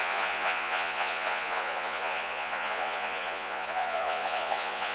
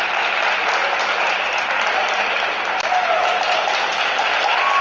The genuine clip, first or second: second